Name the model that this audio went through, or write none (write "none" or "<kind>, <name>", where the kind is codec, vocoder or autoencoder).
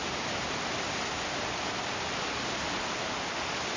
none